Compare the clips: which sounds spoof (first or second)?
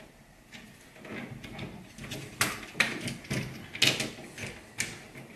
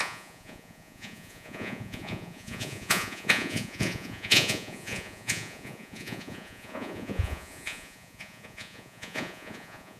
second